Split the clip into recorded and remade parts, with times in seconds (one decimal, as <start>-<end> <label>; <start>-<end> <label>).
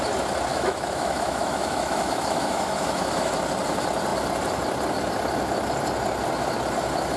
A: 0.0-0.5 recorded; 0.5-3.3 remade; 3.3-7.2 recorded